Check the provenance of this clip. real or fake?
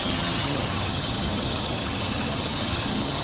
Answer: fake